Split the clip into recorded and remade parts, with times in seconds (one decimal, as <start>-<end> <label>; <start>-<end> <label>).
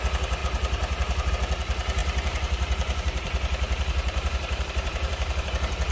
0.0-0.4 recorded; 0.4-1.3 remade; 1.3-2.0 recorded; 2.0-5.5 remade; 5.5-5.9 recorded